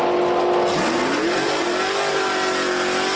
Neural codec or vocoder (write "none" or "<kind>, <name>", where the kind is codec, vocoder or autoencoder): none